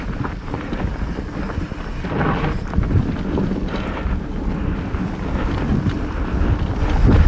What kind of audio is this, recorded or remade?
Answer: recorded